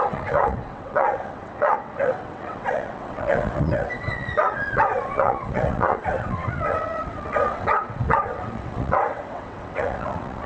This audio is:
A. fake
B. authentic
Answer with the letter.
A